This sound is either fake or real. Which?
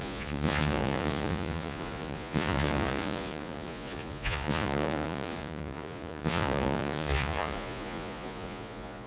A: fake